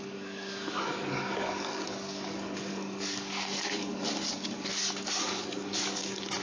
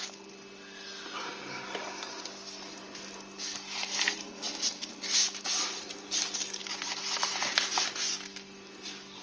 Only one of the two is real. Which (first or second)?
second